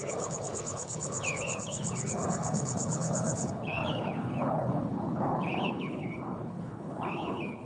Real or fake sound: fake